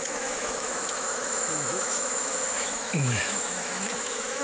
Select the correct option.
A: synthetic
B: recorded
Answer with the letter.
A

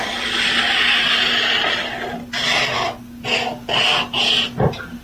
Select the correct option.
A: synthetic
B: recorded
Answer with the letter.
B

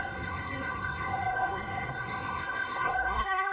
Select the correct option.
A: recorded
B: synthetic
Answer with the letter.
B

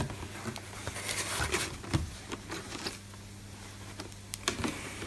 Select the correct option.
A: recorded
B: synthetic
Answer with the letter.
A